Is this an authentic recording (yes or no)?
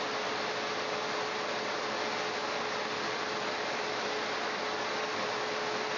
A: yes